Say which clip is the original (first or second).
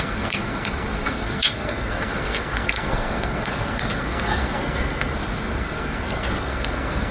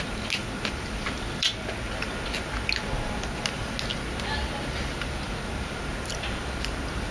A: second